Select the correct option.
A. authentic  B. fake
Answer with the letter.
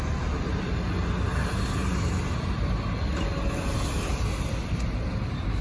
A